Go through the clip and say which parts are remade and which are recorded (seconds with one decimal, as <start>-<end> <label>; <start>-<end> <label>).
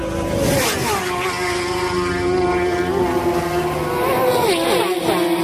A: 0.0-5.4 recorded